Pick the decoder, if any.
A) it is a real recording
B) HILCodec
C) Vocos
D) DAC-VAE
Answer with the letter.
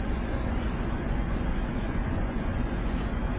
C